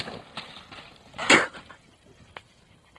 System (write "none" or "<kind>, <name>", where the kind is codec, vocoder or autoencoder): none